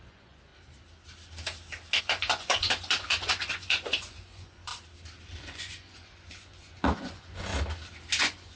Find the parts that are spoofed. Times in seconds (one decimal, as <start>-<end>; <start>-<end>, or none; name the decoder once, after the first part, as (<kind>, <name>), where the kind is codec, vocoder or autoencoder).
0.0-0.5 (vocoder, Vocos); 2.0-4.7; 5.4-7.5; 8.2-8.6